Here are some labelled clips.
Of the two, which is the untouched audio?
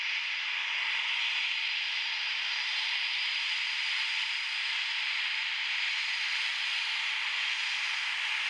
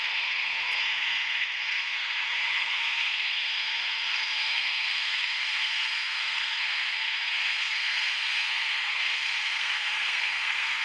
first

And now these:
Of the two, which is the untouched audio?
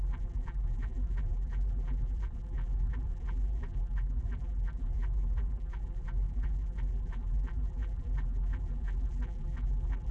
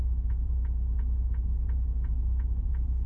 second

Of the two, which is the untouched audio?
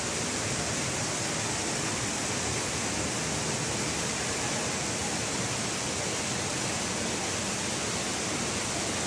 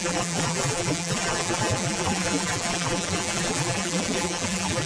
first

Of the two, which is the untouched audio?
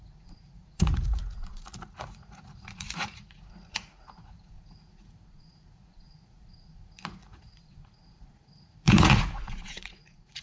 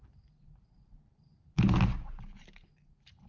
second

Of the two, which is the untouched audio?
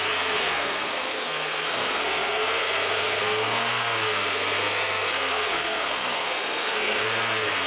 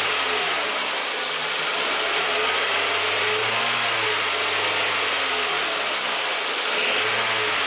second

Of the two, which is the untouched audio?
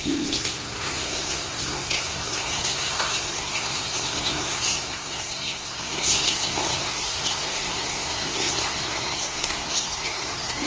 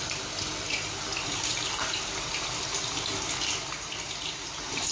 second